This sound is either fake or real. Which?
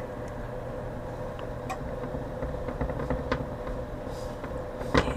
real